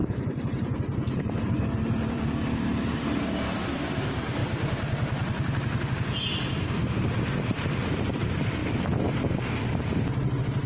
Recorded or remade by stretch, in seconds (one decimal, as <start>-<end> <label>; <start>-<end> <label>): 0.0-3.2 remade; 3.2-10.7 recorded

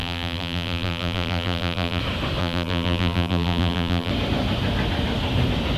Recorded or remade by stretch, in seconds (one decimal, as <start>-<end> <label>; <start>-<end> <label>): 0.0-2.0 remade; 2.0-2.4 recorded; 2.4-4.1 remade; 4.1-5.8 recorded

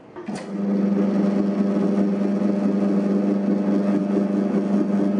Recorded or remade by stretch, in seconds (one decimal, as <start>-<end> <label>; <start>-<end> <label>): 0.0-5.2 recorded

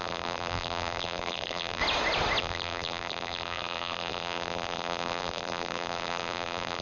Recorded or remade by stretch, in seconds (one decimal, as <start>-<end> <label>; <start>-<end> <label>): 0.0-1.8 remade; 1.8-2.4 recorded; 2.4-6.8 remade